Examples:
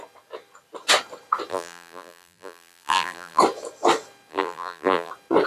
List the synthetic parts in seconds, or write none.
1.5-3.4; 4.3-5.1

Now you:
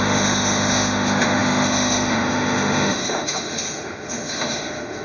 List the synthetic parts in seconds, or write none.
0.0-5.0

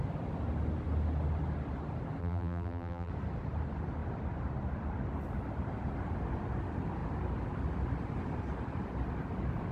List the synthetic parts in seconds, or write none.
2.2-3.1

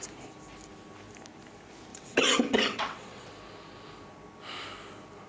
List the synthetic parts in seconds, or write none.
1.9-3.3

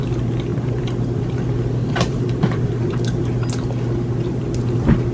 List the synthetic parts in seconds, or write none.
0.5-3.5

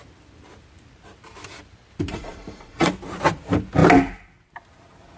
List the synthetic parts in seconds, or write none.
2.1-2.9

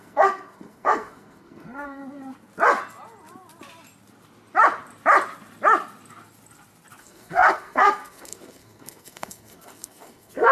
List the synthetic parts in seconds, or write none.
0.0-2.0; 7.0-10.5